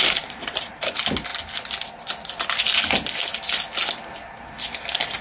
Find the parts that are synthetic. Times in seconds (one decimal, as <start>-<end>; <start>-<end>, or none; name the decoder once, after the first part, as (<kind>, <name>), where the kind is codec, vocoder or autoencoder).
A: 0.0-0.9 (vocoder, BigVGAN v2)